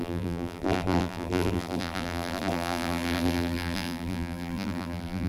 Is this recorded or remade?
remade